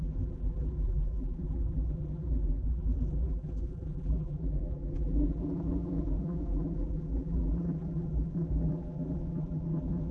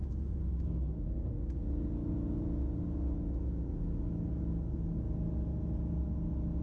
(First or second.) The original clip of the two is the second